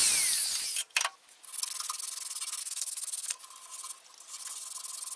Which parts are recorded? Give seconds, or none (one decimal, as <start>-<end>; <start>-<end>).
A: 0.0-2.6; 3.4-5.2